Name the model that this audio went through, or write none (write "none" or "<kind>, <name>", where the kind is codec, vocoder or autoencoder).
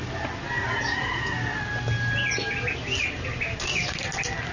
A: none